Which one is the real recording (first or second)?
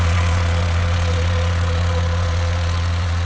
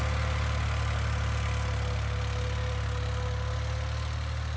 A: second